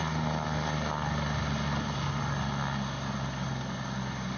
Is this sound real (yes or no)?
yes